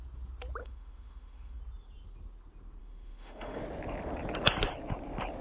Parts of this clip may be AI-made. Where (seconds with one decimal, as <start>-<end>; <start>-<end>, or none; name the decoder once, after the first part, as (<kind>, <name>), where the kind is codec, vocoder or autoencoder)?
0.6-1.6 (autoencoder, DAC-VAE); 2.8-3.6